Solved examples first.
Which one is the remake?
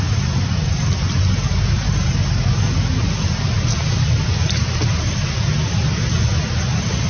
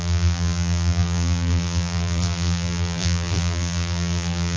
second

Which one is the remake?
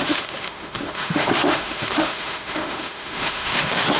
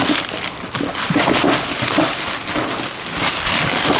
first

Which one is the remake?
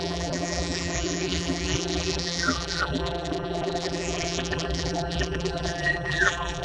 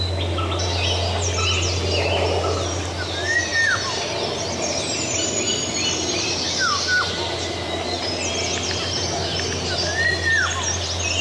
first